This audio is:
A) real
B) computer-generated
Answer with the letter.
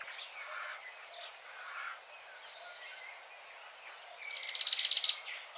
A